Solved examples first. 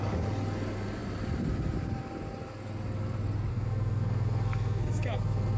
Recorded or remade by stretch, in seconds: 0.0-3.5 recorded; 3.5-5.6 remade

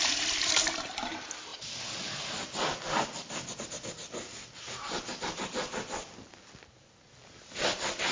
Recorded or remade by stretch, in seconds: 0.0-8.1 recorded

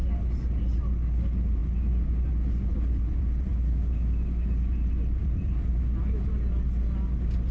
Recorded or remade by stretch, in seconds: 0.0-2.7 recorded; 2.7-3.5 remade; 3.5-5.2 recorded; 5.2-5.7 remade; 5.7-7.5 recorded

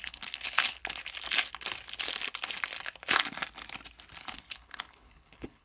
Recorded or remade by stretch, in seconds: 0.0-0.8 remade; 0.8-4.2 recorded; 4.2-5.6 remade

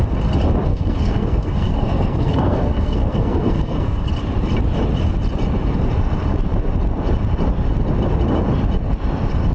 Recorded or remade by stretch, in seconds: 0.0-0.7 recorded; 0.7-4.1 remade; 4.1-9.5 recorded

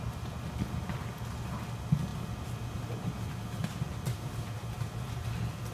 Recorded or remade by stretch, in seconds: 0.0-3.6 recorded; 3.6-5.7 remade